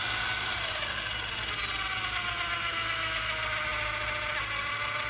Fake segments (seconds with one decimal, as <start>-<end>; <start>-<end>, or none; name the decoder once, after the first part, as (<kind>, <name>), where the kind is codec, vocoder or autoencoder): none